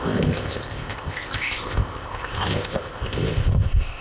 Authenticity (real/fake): fake